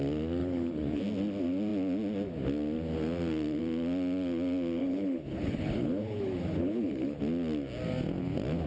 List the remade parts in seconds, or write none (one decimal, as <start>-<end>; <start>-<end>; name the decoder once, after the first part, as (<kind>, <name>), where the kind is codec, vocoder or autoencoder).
0.4-1.0 (codec, HILCodec); 4.8-7.2